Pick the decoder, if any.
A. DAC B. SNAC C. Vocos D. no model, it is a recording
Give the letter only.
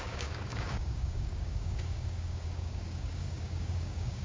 A